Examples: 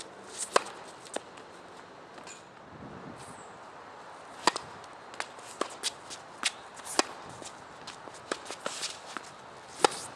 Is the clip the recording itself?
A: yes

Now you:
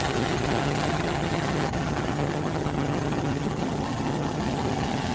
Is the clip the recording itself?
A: no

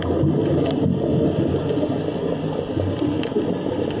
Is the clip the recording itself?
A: yes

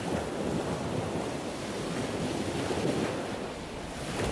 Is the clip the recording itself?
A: yes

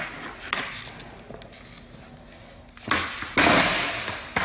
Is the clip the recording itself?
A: yes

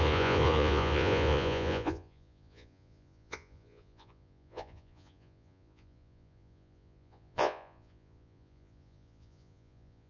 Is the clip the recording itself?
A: no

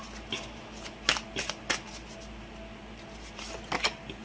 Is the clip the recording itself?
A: yes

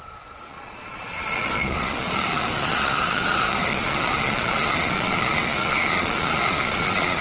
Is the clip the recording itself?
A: no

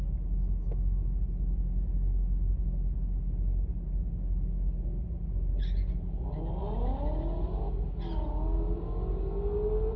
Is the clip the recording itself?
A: yes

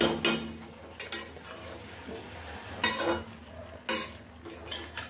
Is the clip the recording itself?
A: yes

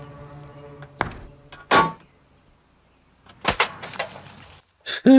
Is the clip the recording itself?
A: yes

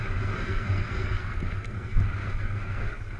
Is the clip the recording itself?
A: no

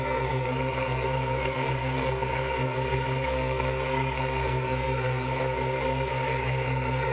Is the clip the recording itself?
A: no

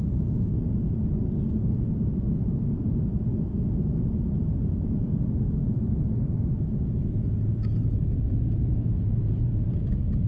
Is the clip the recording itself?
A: no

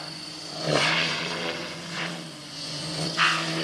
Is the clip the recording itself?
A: no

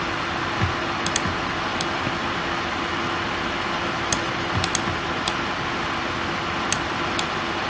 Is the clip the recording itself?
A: yes